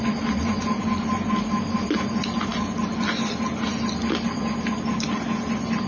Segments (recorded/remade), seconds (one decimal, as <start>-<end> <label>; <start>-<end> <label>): 0.0-5.9 recorded